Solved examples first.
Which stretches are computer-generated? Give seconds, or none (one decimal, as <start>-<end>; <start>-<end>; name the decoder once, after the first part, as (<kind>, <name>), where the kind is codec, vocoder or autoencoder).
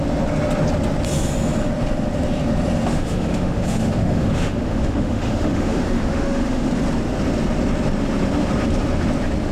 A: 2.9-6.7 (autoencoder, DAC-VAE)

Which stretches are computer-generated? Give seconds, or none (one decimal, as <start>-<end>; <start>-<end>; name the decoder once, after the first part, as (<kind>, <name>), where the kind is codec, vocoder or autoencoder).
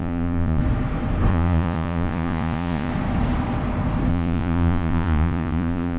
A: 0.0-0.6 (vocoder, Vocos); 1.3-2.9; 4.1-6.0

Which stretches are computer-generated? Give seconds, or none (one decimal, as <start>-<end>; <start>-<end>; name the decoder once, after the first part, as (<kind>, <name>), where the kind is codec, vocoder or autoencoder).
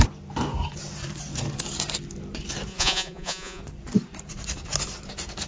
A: 2.7-3.6 (vocoder, Vocos)